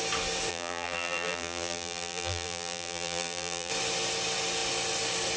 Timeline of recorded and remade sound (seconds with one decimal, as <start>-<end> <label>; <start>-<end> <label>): 0.0-0.5 recorded; 0.5-3.7 remade; 3.7-5.4 recorded